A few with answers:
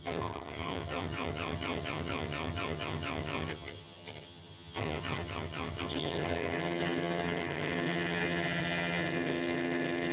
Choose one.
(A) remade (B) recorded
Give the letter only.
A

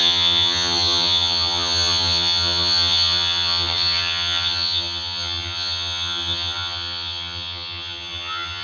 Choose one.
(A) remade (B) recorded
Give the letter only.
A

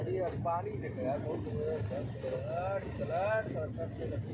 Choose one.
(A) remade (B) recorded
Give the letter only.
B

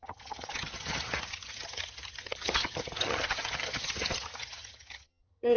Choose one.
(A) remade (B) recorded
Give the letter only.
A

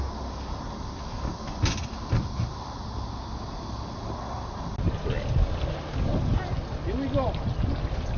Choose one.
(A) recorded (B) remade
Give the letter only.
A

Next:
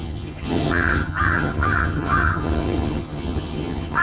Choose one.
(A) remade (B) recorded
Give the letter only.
A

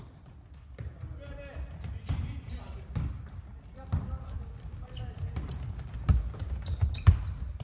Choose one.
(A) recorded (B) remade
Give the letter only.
A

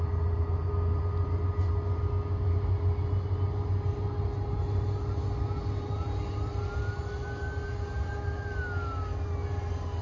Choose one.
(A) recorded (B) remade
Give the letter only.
A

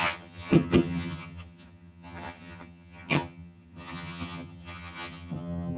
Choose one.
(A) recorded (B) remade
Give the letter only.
B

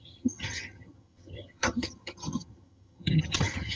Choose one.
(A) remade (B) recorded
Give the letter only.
A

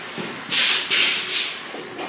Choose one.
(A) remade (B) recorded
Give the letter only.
B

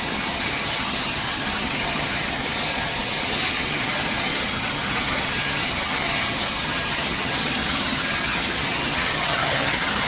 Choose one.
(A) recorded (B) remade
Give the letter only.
B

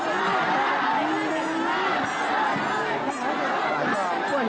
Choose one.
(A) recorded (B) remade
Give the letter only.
A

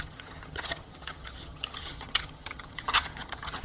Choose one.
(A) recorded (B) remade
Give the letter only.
B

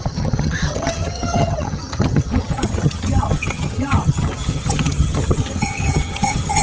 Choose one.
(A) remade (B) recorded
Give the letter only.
A